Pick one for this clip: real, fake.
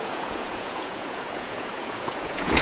fake